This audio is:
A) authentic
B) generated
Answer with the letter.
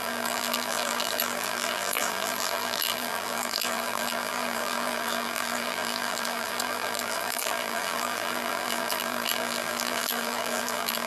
B